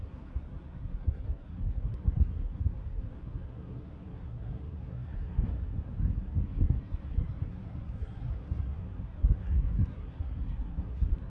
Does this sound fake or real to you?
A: fake